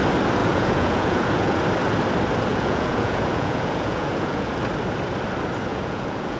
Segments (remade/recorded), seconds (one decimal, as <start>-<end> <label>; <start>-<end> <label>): 0.0-0.4 recorded; 0.4-1.6 remade; 1.6-2.5 recorded; 2.5-4.5 remade; 4.5-5.7 recorded; 5.7-6.4 remade